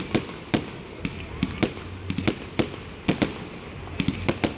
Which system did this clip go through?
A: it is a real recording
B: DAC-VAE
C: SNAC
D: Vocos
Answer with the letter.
A